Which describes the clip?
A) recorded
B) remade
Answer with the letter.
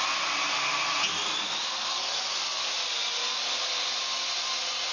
A